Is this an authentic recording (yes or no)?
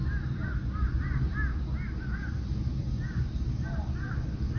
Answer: yes